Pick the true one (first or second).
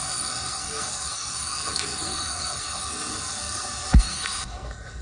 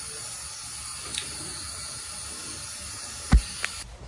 second